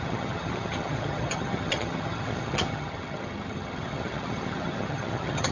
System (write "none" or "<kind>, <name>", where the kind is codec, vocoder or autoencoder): vocoder, HiFi-GAN